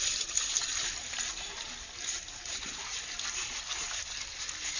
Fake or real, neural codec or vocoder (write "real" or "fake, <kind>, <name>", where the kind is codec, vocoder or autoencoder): real